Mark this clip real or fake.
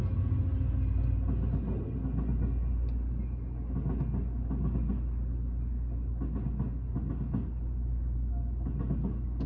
real